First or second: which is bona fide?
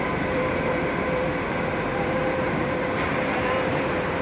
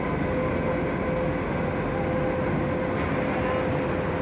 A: second